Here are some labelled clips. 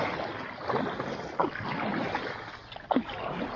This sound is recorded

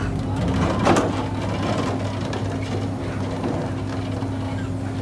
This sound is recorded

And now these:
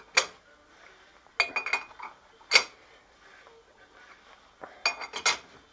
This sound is recorded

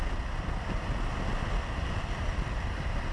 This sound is recorded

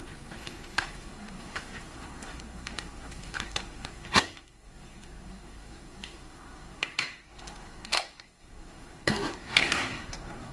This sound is remade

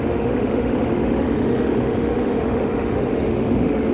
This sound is remade